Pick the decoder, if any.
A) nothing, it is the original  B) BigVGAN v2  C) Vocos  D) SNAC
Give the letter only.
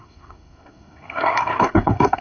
D